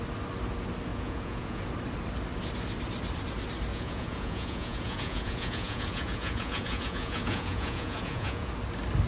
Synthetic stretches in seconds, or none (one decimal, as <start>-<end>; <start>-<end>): 0.9-1.6; 3.7-8.5